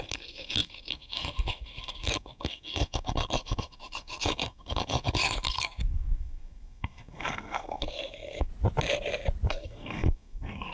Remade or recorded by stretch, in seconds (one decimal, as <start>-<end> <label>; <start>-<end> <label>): 0.0-8.5 remade; 8.5-9.5 recorded; 9.5-10.7 remade